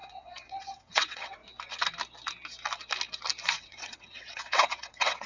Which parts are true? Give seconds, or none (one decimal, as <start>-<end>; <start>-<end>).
1.4-3.6